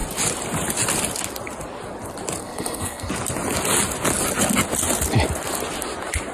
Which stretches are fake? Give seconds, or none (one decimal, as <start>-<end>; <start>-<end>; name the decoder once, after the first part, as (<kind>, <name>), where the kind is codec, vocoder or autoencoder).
2.4-3.1 (codec, SNAC)

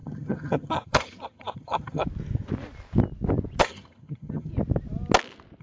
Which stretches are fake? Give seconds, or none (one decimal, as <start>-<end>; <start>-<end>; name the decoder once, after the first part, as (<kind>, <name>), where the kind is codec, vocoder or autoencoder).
0.0-2.0 (vocoder, HiFi-GAN); 3.6-4.5